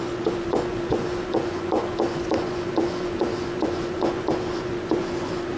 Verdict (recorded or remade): remade